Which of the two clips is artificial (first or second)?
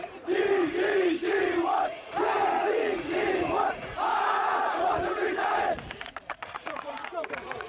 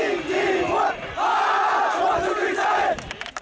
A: first